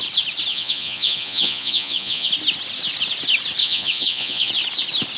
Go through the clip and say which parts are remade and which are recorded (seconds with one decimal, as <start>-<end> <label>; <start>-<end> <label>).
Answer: 0.0-0.5 recorded; 0.5-2.3 remade; 2.3-3.6 recorded; 3.6-4.5 remade; 4.5-5.2 recorded